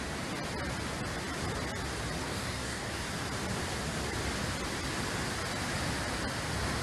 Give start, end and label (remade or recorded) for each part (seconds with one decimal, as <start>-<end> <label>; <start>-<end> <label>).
0.0-2.2 recorded; 2.2-3.0 remade; 3.0-6.8 recorded